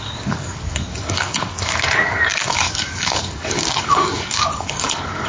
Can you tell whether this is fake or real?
fake